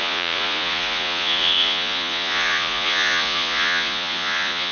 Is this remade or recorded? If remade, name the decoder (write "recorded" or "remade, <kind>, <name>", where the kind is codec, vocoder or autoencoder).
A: remade, vocoder, Vocos